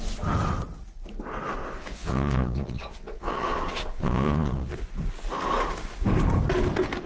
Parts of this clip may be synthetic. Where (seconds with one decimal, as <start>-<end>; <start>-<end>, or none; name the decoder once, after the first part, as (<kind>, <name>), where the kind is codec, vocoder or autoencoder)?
1.6-4.9 (vocoder, Vocos)